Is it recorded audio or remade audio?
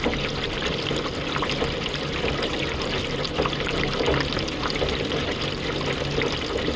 recorded